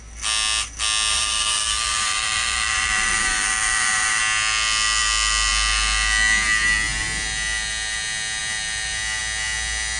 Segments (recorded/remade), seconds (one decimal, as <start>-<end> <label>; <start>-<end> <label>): 0.0-1.1 recorded; 1.1-4.2 remade; 4.2-10.0 recorded